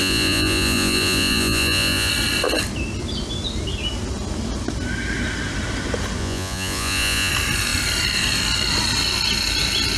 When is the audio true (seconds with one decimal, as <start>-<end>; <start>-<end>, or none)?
2.1-6.2; 7.3-10.0